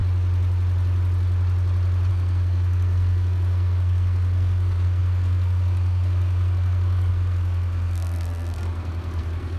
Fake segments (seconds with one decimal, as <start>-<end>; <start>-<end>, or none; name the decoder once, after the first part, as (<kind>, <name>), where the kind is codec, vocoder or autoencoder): 2.1-9.6 (codec, SNAC)